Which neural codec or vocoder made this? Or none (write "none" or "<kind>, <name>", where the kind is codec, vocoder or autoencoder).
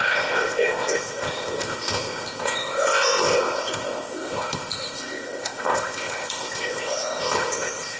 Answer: codec, ZipCodec